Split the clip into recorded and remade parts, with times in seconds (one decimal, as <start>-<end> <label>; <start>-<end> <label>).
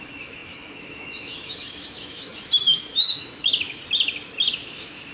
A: 0.0-3.8 remade; 3.8-4.5 recorded; 4.5-5.1 remade